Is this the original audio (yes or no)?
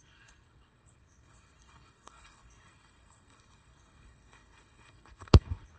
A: no